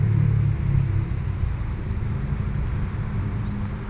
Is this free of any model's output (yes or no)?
yes